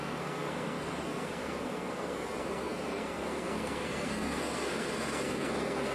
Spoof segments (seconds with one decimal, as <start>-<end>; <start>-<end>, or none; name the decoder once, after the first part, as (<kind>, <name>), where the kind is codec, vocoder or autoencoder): 0.0-5.9 (codec, SNAC)